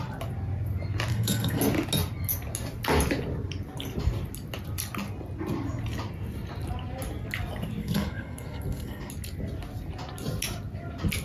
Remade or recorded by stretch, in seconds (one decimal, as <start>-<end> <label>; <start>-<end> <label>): 0.0-1.1 recorded; 1.1-1.6 remade; 1.6-7.8 recorded; 7.8-9.1 remade; 9.1-11.2 recorded